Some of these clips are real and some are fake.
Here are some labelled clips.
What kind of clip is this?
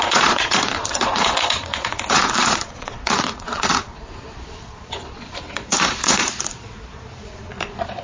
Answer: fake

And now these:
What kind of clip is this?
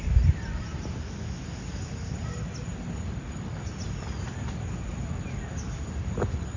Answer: real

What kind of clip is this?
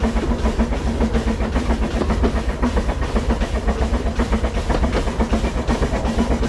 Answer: real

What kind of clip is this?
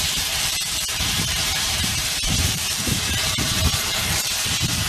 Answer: fake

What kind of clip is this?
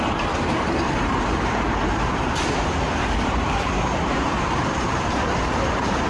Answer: fake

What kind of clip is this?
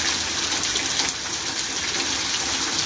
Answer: real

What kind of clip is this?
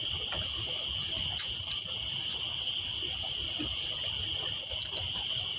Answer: real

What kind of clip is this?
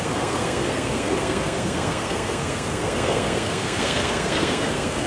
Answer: fake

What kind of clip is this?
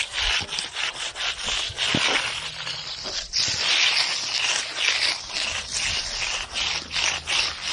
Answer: real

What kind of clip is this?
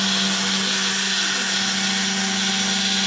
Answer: real